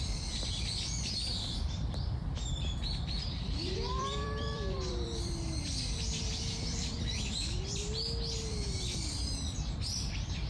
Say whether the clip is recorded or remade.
remade